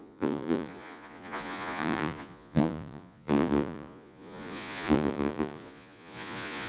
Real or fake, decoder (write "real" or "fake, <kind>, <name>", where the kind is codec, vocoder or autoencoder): fake, vocoder, Vocos